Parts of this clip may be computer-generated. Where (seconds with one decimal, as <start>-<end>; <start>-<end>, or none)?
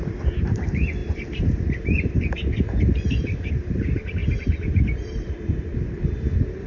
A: 0.0-6.7